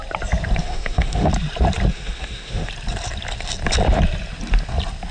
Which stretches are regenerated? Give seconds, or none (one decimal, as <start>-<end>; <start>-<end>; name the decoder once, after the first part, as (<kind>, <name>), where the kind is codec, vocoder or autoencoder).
0.6-1.3 (autoencoder, DAC-VAE); 1.9-2.7